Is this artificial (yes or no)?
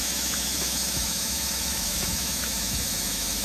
yes